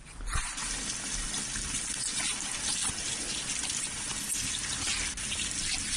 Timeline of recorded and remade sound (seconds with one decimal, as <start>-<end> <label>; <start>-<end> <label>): 0.0-0.6 remade; 0.6-2.4 recorded; 2.4-2.8 remade; 2.8-3.8 recorded; 3.8-6.0 remade